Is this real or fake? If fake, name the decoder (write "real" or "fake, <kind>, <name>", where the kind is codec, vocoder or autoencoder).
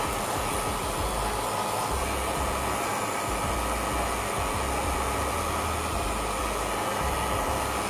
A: real